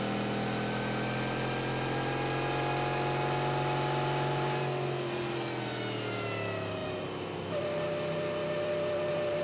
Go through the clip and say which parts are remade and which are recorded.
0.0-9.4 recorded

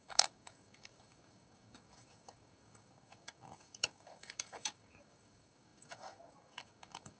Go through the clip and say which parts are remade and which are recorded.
0.0-7.2 remade

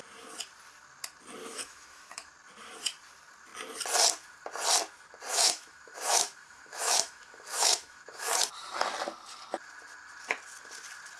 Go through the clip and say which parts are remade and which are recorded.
0.0-1.4 recorded; 1.4-2.3 remade; 2.3-5.3 recorded; 5.3-8.4 remade; 8.4-11.2 recorded

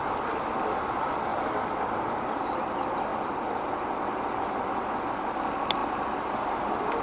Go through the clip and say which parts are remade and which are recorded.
0.0-1.3 recorded; 1.3-2.4 remade; 2.4-7.0 recorded

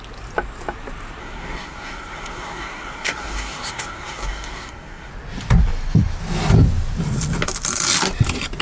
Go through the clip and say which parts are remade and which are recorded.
0.0-1.2 recorded; 1.2-5.1 remade; 5.1-8.6 recorded

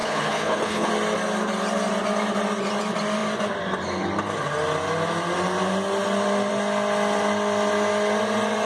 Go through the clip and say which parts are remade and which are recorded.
0.0-0.9 remade; 0.9-8.7 recorded

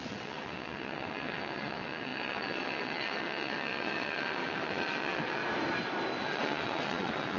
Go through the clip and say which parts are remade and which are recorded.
0.0-5.4 remade; 5.4-6.2 recorded; 6.2-7.4 remade

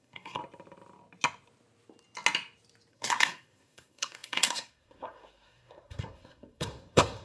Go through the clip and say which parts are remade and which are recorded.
0.0-0.4 remade; 0.4-2.9 recorded; 2.9-7.2 remade